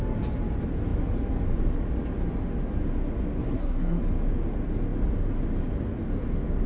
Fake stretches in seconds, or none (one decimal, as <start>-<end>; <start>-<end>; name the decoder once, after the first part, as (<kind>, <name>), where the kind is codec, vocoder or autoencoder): 3.4-4.0 (codec, SNAC)